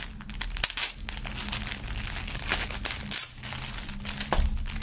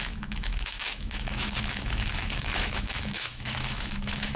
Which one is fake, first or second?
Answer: second